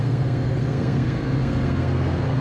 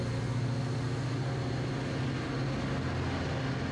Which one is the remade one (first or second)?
first